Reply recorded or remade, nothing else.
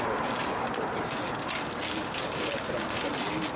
recorded